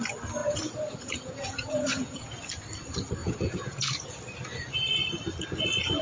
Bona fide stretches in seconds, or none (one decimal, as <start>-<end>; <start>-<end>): 0.0-0.4; 2.3-3.2; 4.2-6.0